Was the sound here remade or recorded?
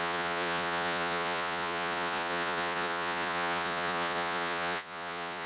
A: remade